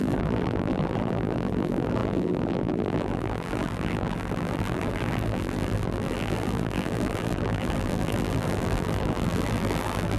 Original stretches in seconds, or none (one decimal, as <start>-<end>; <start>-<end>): none